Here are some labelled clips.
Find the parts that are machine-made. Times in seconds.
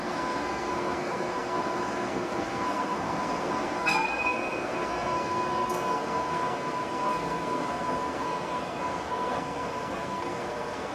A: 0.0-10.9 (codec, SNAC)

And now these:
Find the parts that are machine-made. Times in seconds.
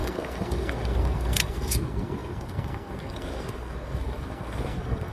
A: 0.0-5.1 (codec, SNAC)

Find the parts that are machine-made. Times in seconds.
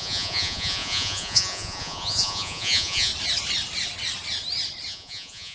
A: 0.0-3.1 (vocoder, Vocos); 4.9-5.5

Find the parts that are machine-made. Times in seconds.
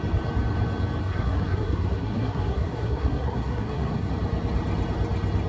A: 1.0-4.1 (codec, SNAC)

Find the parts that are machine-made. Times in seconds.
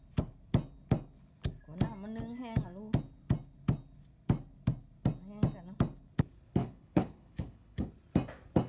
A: 6.6-7.9 (codec, HILCodec)